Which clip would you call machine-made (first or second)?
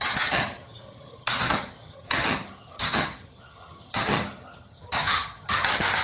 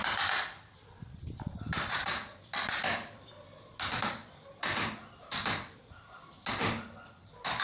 first